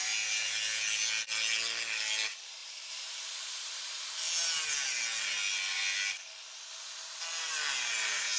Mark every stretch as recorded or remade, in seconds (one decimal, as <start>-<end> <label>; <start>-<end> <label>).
0.0-2.6 recorded; 2.6-4.0 remade; 4.0-8.4 recorded